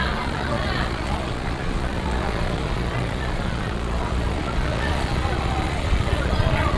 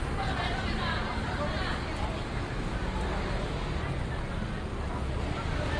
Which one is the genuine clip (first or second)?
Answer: second